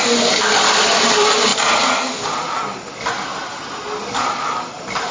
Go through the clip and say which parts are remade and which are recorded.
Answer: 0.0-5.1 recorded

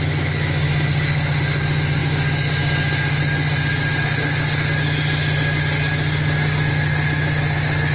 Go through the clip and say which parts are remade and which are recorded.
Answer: 0.0-7.9 recorded

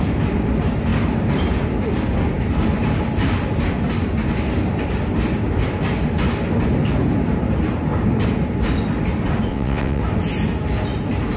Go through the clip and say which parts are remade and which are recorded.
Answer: 0.0-9.5 recorded; 9.5-10.0 remade; 10.0-11.4 recorded

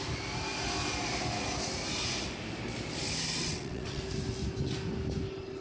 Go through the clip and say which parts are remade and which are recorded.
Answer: 0.0-3.4 recorded; 3.4-4.0 remade; 4.0-5.6 recorded